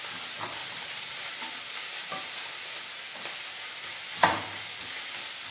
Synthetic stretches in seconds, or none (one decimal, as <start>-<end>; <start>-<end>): 0.6-1.3; 4.1-5.0